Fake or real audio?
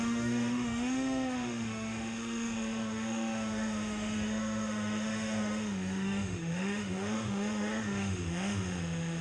fake